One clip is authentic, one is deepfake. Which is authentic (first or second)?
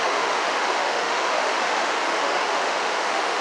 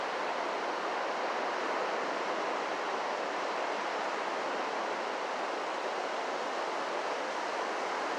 second